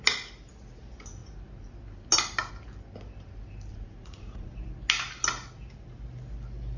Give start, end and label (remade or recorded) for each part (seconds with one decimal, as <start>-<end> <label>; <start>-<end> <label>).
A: 0.0-3.7 recorded; 3.7-4.5 remade; 4.5-6.8 recorded